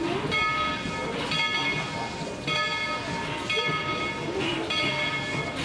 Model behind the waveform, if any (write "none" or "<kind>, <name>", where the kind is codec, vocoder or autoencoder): none